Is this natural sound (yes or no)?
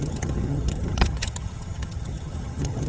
no